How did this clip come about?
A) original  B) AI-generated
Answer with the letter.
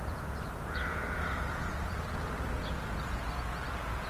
B